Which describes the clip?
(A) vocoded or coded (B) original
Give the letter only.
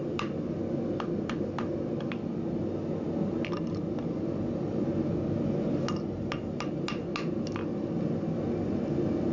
B